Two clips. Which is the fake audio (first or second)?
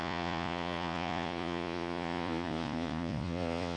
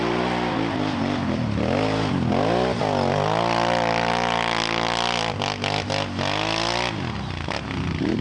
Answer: first